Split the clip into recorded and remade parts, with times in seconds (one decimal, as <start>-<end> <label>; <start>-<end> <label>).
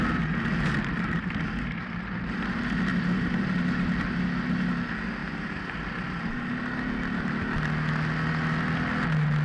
0.0-2.9 recorded; 2.9-3.6 remade; 3.6-5.2 recorded; 5.2-6.5 remade; 6.5-9.4 recorded